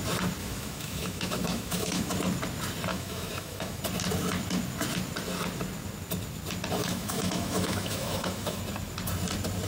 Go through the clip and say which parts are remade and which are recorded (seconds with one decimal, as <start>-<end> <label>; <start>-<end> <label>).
0.0-0.4 recorded; 0.4-2.1 remade; 2.1-2.9 recorded; 2.9-3.8 remade; 3.8-6.8 recorded; 6.8-8.6 remade; 8.6-9.7 recorded